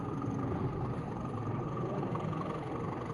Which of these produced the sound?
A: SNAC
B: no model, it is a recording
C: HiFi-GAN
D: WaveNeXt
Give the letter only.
B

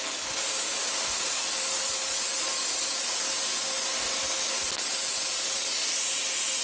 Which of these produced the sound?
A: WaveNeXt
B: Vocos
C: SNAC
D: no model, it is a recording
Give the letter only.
D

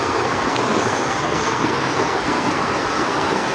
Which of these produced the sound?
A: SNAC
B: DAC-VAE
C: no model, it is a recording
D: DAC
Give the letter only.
A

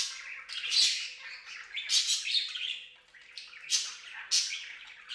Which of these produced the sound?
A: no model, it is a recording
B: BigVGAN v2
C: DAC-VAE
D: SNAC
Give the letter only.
A